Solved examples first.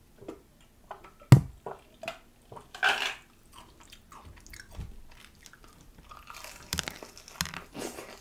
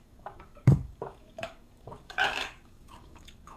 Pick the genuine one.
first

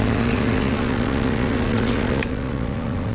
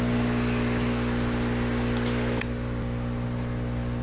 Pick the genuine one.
second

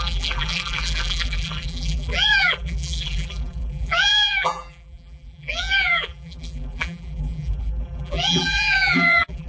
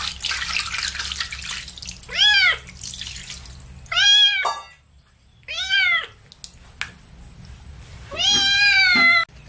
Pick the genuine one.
second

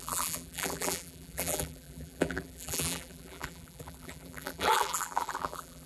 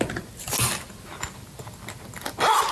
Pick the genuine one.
second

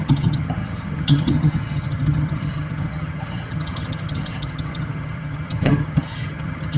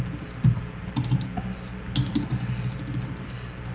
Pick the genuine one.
second